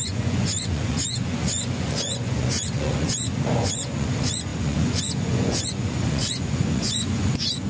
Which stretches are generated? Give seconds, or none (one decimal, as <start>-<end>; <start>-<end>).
0.0-7.7